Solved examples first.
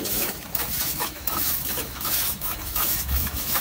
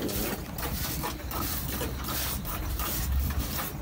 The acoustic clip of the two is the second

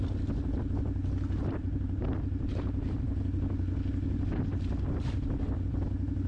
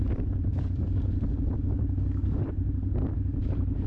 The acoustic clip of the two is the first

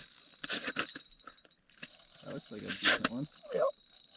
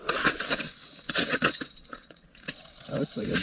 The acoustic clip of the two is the first